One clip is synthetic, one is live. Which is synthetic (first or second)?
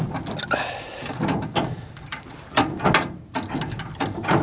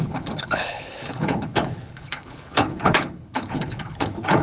second